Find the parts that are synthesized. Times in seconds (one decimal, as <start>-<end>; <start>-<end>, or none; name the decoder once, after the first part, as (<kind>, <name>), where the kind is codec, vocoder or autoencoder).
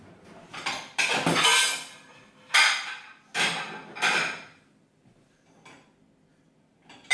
none